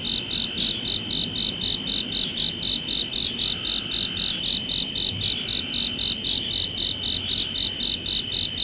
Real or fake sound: real